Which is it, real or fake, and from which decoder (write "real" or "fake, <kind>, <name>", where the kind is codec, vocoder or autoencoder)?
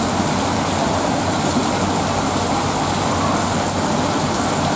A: real